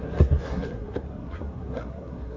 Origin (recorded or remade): remade